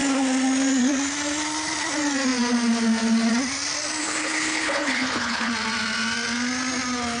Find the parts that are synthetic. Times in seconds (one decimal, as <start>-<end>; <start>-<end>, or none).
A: 4.0-5.5